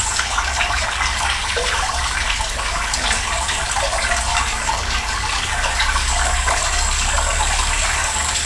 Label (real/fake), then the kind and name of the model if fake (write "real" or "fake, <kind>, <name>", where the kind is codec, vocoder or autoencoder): fake, codec, DAC